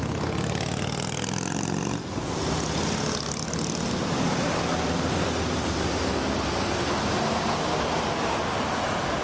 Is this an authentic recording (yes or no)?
yes